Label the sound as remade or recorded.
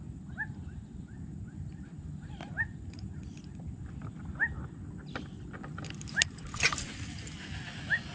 recorded